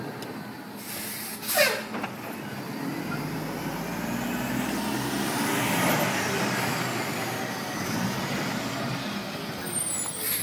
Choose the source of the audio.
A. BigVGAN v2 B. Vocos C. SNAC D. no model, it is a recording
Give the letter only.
D